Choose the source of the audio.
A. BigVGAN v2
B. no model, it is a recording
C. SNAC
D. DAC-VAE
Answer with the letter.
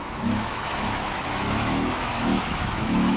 D